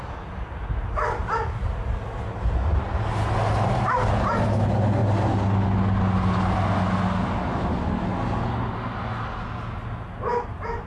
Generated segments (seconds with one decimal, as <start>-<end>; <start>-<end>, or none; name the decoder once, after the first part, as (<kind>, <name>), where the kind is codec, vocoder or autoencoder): none